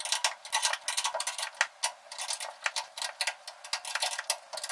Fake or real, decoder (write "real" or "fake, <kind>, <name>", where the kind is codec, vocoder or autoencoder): real